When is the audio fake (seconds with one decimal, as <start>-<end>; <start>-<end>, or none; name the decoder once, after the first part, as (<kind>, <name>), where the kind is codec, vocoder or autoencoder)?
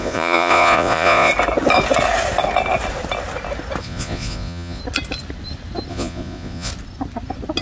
0.0-1.3 (vocoder, Vocos); 3.8-4.8; 5.9-6.7